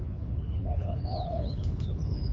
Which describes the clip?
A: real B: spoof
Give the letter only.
B